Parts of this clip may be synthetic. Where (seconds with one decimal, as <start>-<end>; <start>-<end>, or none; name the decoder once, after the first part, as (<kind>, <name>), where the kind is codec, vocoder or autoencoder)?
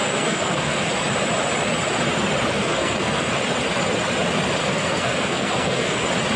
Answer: 0.0-0.9 (codec, SNAC); 2.6-3.3; 4.6-6.0